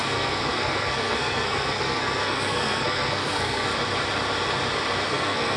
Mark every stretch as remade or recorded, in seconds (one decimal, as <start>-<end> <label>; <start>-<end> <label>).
0.0-3.7 remade; 3.7-5.1 recorded; 5.1-5.6 remade